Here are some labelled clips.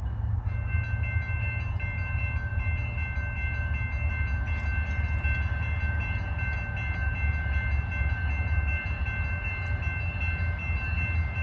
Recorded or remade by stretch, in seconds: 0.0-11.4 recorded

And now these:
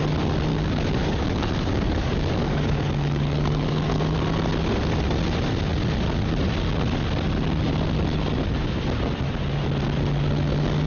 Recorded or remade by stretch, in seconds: 0.0-0.5 recorded; 0.5-4.0 remade; 4.0-10.9 recorded

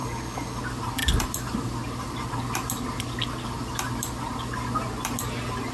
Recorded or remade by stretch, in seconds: 0.0-0.6 remade; 0.6-5.7 recorded